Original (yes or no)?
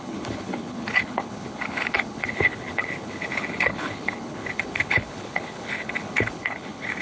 no